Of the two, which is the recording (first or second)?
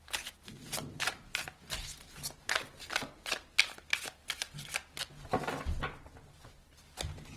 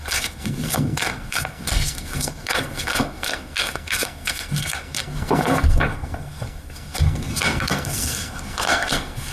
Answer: first